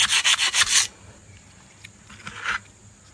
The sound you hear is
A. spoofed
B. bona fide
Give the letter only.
B